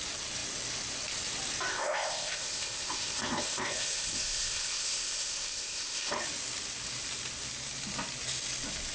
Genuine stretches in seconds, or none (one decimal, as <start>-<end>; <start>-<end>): 0.0-1.7; 6.2-8.9

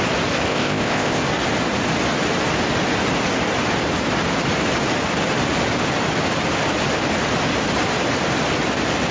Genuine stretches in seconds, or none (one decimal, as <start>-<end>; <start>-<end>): 0.0-0.5; 1.2-9.1

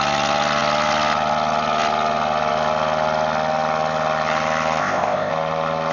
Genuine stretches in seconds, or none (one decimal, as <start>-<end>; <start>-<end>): 0.0-4.8; 5.3-5.9